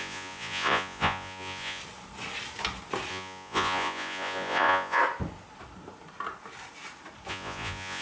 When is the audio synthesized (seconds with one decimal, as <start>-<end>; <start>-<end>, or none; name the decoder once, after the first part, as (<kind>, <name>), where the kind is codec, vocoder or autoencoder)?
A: 0.0-1.8 (vocoder, Vocos); 3.1-5.0; 7.3-8.0